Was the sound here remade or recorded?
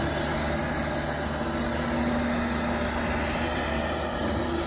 recorded